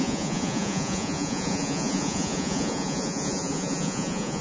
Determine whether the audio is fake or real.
fake